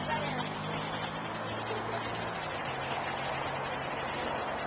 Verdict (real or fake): real